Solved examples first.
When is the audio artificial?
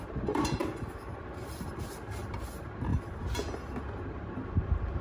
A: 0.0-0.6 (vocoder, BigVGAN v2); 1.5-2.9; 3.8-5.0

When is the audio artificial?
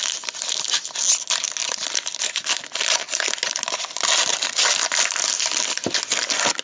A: none